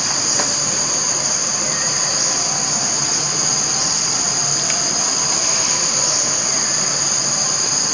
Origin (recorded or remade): recorded